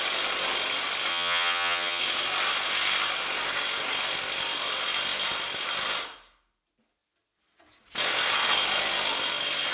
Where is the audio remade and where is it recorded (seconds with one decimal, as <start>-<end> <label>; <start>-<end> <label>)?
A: 0.0-1.1 recorded; 1.1-2.0 remade; 2.0-9.7 recorded